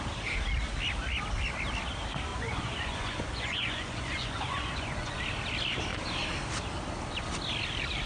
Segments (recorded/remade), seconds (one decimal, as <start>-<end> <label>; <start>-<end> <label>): 0.0-2.3 recorded; 2.3-5.2 remade; 5.2-8.1 recorded